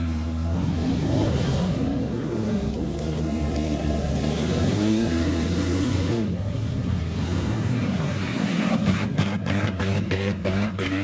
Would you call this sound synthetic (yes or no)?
yes